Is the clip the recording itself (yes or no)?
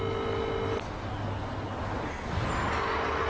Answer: yes